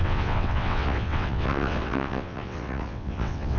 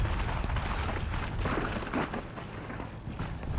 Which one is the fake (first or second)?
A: first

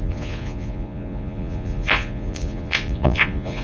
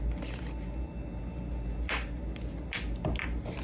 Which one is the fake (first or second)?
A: first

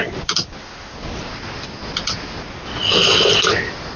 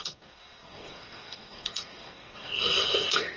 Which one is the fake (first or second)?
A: second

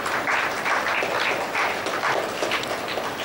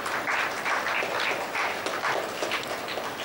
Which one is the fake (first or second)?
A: first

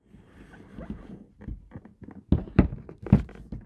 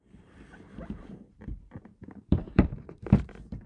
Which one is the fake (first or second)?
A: second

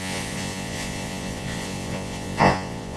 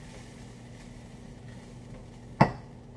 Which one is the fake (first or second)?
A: first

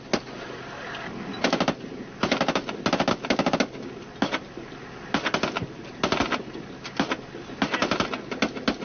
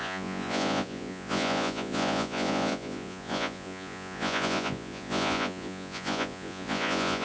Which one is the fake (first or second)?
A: second